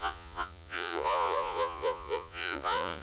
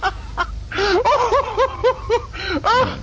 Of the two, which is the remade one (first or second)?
first